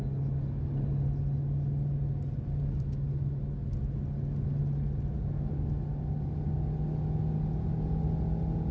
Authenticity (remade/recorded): recorded